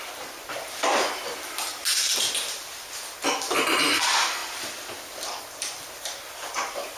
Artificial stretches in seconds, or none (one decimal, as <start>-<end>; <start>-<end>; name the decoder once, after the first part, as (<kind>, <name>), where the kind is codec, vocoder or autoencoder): none